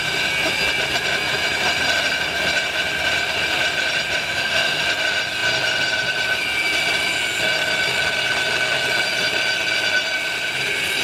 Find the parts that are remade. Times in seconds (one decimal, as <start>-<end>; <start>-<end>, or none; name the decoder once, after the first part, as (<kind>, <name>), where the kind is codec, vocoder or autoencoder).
4.2-4.8 (autoencoder, DAC-VAE)